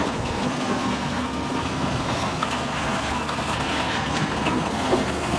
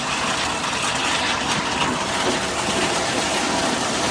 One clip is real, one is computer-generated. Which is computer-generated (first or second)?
first